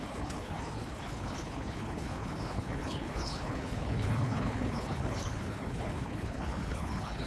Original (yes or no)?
no